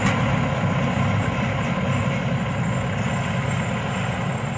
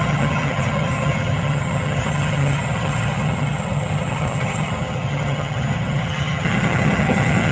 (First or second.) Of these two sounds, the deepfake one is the second